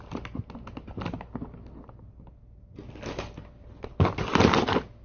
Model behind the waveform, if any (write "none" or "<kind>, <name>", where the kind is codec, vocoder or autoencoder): none